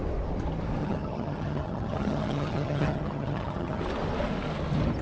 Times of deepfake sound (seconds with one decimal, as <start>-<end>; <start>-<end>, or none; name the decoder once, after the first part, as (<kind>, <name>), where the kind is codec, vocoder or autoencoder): 0.8-3.8 (vocoder, HiFi-GAN)